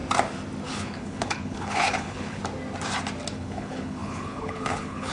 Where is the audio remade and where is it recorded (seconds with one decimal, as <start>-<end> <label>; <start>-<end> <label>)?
0.0-0.7 recorded; 0.7-2.4 remade; 2.4-3.3 recorded; 3.3-5.1 remade